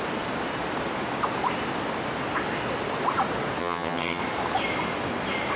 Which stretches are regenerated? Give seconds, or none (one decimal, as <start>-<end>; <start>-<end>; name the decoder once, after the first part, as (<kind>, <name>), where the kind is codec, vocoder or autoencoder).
3.6-4.2 (vocoder, HiFi-GAN)